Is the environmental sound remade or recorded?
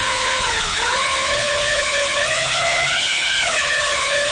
remade